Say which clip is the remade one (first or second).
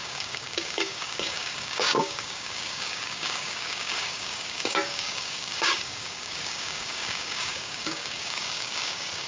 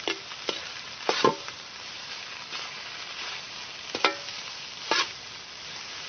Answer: first